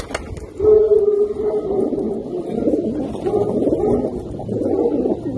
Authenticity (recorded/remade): recorded